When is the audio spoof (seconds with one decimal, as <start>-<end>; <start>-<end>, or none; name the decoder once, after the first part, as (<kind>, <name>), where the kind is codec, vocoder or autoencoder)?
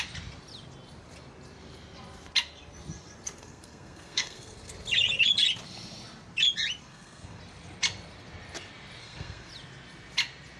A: 3.4-4.7 (codec, SNAC); 6.8-7.4; 9.0-9.5